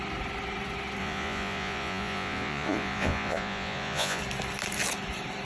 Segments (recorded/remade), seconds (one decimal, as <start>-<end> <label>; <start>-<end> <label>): 0.0-1.0 recorded; 1.0-4.2 remade; 4.2-5.4 recorded